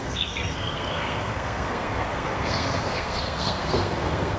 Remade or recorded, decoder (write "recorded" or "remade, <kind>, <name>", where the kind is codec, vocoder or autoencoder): remade, codec, SNAC